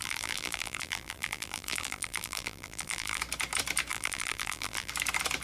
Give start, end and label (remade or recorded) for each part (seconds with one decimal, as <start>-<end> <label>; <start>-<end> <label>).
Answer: 0.0-3.2 remade; 3.2-3.9 recorded; 3.9-4.9 remade; 4.9-5.4 recorded